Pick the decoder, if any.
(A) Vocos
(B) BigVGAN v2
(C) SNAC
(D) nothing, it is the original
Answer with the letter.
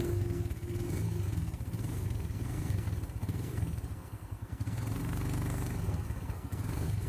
C